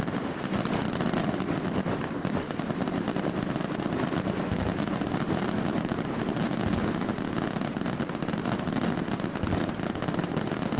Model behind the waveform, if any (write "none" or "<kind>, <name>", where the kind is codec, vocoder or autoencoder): vocoder, BigVGAN v2